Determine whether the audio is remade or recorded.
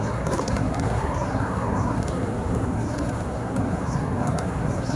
remade